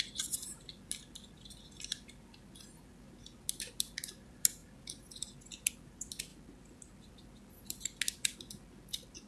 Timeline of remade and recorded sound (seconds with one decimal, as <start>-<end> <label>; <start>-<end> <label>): 0.0-9.3 recorded